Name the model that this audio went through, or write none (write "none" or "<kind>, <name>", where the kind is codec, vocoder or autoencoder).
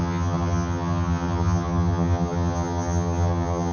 vocoder, HiFi-GAN